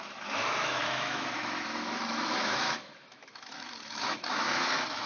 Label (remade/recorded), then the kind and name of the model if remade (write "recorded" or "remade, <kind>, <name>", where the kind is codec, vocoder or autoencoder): remade, autoencoder, DAC-VAE